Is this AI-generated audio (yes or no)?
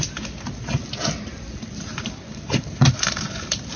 no